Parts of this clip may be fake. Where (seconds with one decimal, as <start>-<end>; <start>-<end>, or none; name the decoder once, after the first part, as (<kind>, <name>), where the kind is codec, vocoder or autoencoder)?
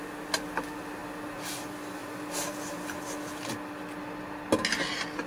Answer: none